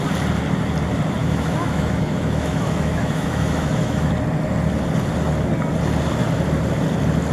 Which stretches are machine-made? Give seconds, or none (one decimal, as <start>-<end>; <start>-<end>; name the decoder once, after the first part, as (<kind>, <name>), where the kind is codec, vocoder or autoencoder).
1.2-4.1 (autoencoder, DAC-VAE)